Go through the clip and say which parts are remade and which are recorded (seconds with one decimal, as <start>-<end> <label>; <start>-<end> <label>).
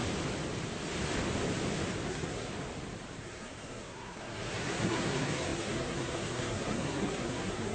0.0-2.1 recorded; 2.1-2.5 remade; 2.5-3.2 recorded; 3.2-7.7 remade